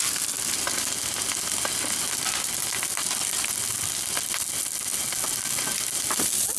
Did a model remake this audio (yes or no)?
no